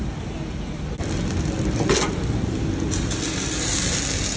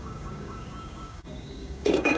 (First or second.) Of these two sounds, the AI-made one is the second